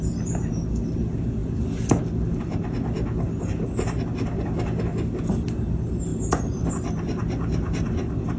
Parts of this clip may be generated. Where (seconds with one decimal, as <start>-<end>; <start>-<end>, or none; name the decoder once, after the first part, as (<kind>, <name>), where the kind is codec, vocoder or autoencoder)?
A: none